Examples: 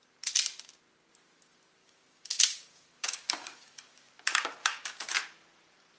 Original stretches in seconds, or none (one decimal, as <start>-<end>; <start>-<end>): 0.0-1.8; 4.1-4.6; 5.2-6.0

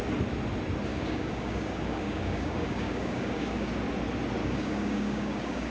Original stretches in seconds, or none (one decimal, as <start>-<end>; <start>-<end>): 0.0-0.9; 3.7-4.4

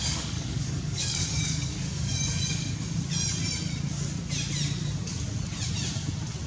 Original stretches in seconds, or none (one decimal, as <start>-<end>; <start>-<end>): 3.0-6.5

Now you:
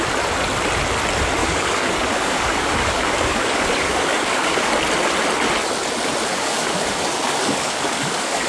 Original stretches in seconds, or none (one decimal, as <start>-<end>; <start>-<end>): 0.0-1.4; 4.7-6.3

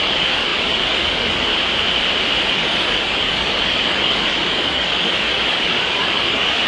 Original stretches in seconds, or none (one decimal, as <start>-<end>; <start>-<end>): 1.5-2.5

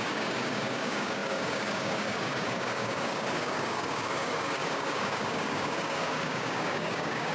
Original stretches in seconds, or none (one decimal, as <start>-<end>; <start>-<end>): none